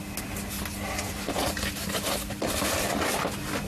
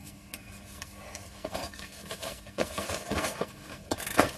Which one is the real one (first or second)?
first